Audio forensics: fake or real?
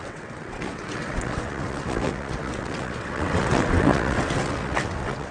fake